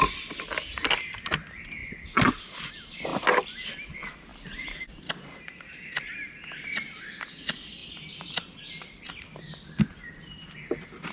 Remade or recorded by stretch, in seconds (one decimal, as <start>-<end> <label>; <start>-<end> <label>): 0.0-4.3 recorded; 4.3-6.1 remade; 6.1-11.1 recorded